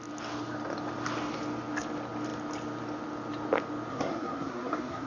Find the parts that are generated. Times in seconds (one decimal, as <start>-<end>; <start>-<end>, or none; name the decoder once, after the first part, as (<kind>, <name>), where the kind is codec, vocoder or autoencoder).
3.9-5.1 (codec, SNAC)